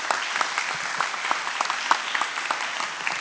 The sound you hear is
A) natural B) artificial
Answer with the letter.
A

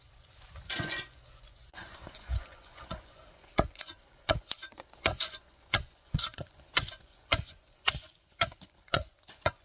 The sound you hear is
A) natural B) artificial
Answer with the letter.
B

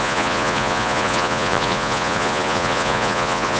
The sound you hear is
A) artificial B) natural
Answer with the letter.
A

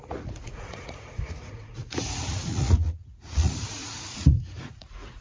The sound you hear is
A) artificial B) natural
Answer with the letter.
A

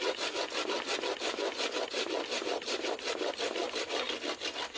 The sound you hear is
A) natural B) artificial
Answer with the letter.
A